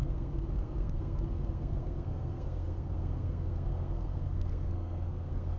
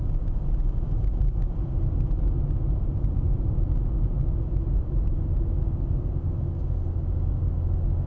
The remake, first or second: first